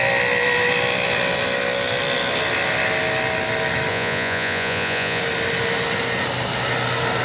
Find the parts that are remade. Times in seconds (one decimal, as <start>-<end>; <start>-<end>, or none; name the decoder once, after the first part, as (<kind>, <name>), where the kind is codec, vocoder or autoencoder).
3.9-5.2 (vocoder, Vocos)